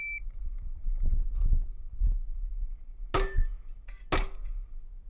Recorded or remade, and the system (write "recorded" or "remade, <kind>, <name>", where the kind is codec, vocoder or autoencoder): recorded